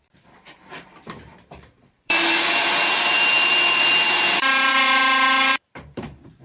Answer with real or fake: fake